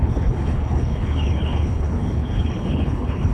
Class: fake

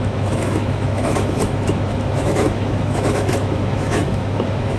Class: fake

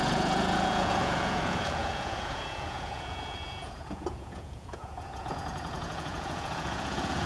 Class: fake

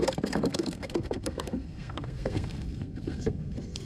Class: fake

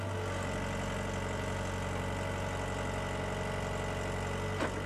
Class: real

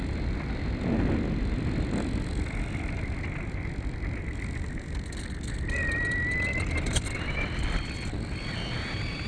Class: real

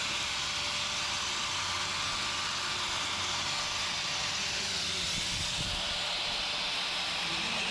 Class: real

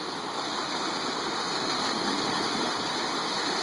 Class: real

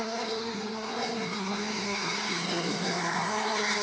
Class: fake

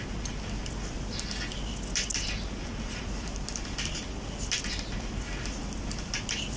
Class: real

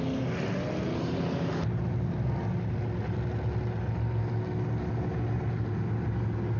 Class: real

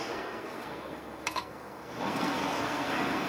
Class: fake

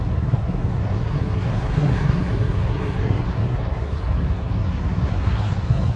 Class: fake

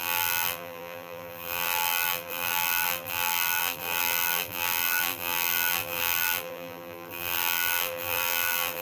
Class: fake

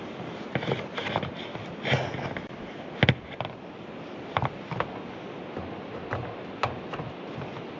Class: real